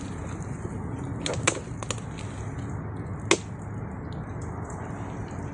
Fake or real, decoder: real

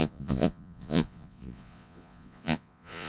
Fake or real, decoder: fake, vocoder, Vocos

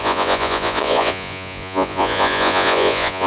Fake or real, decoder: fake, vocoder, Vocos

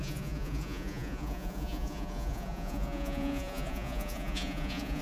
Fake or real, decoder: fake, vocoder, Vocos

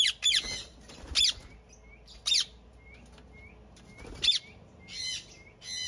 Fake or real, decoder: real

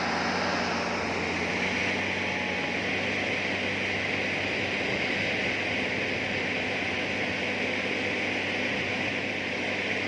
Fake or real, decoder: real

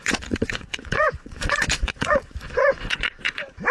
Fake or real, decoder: fake, vocoder, Vocos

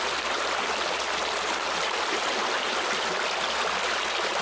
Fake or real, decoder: real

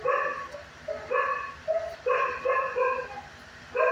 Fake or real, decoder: real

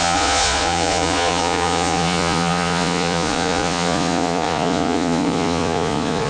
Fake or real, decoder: fake, vocoder, Vocos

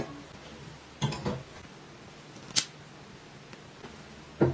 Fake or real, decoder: real